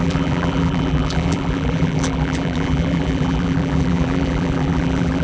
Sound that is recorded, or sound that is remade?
remade